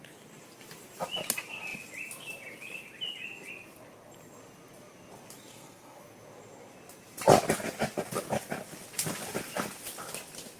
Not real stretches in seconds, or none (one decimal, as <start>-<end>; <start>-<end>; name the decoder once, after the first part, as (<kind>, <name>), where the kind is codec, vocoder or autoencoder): 5.5-6.0 (codec, SNAC)